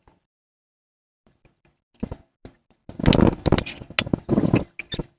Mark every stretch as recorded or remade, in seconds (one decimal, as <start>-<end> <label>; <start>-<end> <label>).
0.0-5.2 recorded